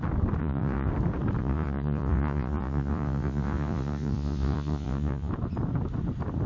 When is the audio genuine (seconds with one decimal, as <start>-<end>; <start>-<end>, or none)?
0.0-0.4; 0.9-1.4; 5.3-6.5